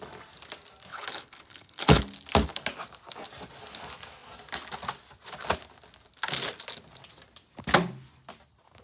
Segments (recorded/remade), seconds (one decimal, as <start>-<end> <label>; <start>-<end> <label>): 0.0-0.9 recorded; 0.9-2.0 remade; 2.0-8.8 recorded